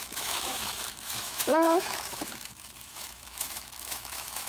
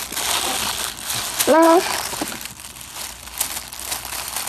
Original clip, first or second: second